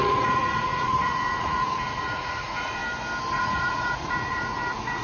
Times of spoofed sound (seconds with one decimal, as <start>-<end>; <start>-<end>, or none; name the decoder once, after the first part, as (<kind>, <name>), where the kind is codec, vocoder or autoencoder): 0.0-2.8 (vocoder, Vocos); 3.3-5.0